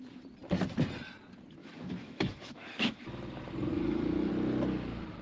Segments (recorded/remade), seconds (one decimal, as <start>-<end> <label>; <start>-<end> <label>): 0.0-1.6 recorded; 1.6-3.0 remade; 3.0-3.7 recorded; 3.7-4.3 remade; 4.3-5.2 recorded